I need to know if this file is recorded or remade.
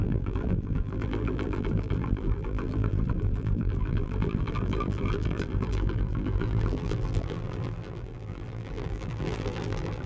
remade